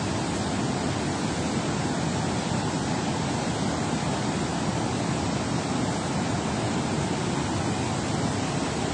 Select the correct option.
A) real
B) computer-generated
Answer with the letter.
A